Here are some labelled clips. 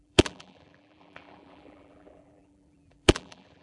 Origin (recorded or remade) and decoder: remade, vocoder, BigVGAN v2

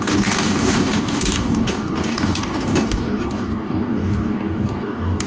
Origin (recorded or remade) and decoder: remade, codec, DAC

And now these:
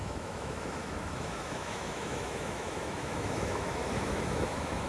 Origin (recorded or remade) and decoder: remade, autoencoder, DAC-VAE